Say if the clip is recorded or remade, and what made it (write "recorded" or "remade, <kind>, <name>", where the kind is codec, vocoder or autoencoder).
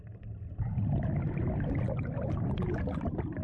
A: recorded